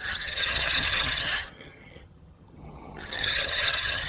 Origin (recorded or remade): remade